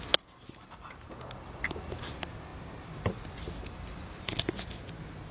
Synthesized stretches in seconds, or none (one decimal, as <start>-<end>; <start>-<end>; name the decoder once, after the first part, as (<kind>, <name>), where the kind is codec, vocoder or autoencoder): none